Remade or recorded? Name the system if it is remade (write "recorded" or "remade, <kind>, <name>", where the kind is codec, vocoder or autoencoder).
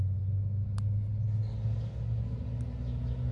recorded